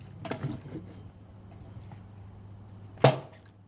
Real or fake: real